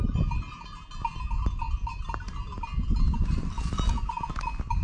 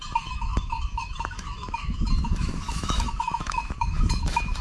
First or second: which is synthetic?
second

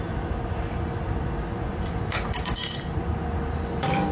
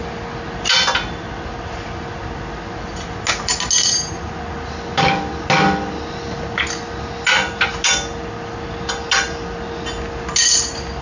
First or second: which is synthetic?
first